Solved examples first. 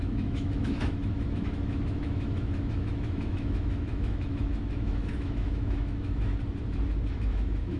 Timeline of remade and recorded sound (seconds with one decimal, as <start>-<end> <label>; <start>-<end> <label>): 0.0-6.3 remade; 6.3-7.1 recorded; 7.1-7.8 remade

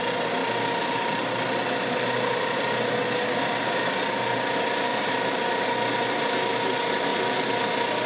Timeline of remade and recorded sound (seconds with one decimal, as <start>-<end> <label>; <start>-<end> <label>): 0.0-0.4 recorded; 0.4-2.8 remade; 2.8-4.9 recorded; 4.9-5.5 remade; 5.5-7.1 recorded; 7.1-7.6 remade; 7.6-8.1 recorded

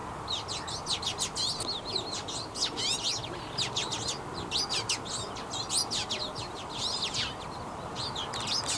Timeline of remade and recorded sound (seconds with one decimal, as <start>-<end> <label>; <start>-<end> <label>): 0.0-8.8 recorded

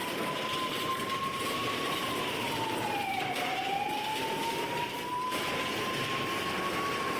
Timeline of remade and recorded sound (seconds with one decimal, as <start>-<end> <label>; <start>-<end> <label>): 0.0-2.1 remade; 2.1-4.1 recorded; 4.1-5.6 remade; 5.6-7.2 recorded

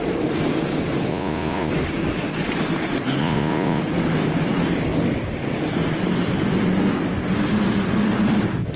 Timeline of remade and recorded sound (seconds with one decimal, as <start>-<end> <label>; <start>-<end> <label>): 0.0-1.1 recorded; 1.1-1.7 remade; 1.7-3.2 recorded; 3.2-3.8 remade; 3.8-8.8 recorded

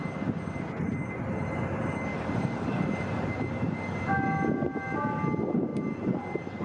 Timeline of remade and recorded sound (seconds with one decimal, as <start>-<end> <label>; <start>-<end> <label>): 0.0-2.1 recorded; 2.1-3.0 remade; 3.0-6.6 recorded

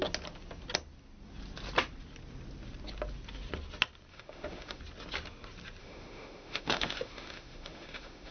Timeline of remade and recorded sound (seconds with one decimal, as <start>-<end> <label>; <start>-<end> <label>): 0.0-4.1 recorded; 4.1-4.8 remade; 4.8-5.8 recorded; 5.8-8.3 remade

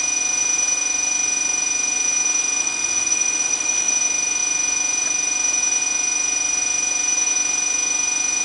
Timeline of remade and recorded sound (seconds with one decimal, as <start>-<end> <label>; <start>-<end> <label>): 0.0-2.6 recorded; 2.6-3.9 remade; 3.9-8.4 recorded